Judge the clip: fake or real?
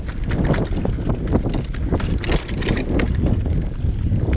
real